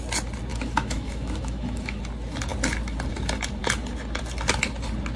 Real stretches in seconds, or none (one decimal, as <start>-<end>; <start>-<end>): 0.0-0.5; 2.0-5.2

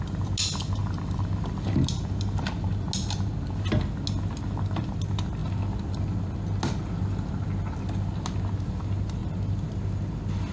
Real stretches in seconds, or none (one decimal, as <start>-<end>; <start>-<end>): 0.0-10.5

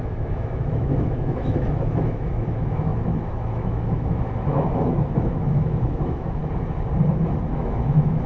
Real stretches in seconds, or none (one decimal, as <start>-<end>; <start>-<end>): 6.4-7.5

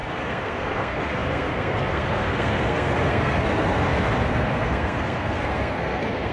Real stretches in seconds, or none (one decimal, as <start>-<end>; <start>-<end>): none

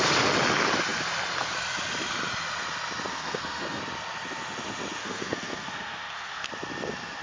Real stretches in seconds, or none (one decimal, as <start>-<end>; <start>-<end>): 0.0-3.1; 3.8-5.0; 6.5-7.2

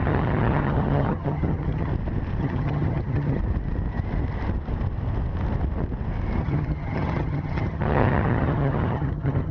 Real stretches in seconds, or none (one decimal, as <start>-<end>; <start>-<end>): 1.9-2.4; 3.4-6.4